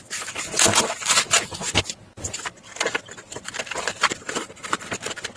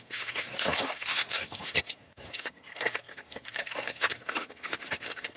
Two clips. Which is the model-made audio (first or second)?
second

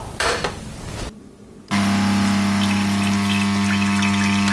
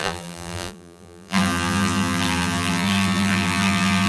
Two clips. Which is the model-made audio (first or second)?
second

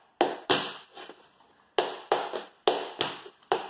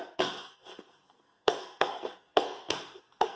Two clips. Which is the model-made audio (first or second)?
second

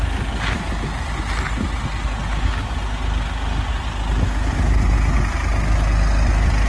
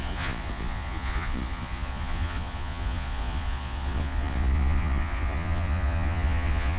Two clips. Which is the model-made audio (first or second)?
second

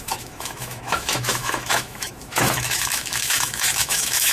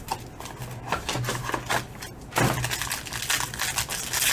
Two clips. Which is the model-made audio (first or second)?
first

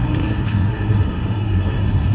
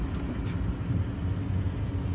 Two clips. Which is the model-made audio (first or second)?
first